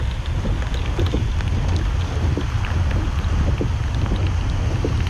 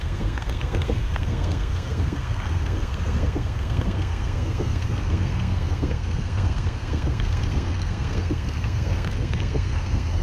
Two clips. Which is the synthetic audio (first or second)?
second